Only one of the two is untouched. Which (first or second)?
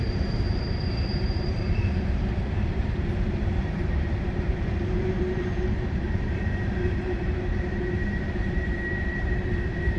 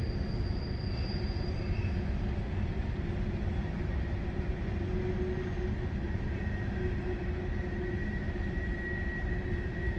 second